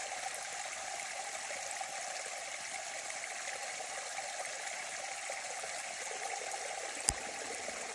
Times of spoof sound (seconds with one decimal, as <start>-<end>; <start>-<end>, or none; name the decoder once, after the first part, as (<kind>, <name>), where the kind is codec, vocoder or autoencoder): none